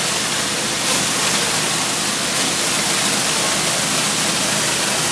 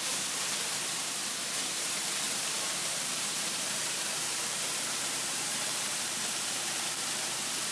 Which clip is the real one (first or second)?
first